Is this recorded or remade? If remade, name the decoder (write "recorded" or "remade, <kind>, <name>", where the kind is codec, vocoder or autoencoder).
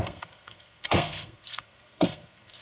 remade, codec, SNAC